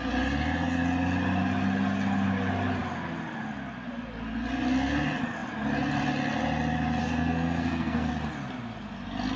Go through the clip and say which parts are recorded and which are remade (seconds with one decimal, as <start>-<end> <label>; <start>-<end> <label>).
0.0-7.0 recorded; 7.0-8.1 remade; 8.1-9.4 recorded